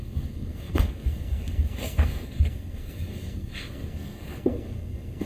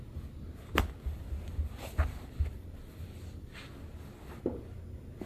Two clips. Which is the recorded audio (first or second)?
second